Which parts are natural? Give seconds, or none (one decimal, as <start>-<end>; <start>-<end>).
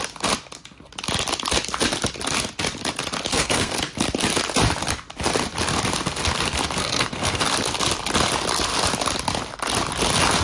0.0-3.3; 3.8-6.8; 7.4-10.4